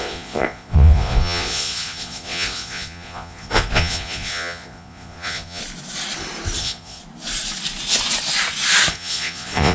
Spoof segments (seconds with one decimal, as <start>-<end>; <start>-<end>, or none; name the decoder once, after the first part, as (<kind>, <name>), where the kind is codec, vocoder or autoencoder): 0.0-5.6 (vocoder, Vocos); 6.6-7.0; 8.9-9.7